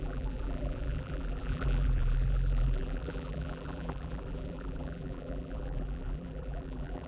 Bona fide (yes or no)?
no